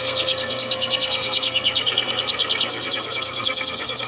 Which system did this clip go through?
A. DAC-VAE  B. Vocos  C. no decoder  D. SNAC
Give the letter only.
D